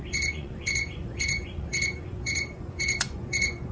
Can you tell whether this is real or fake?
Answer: fake